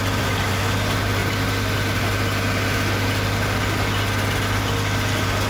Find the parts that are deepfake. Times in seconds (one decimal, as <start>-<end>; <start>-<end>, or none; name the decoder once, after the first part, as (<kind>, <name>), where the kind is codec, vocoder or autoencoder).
none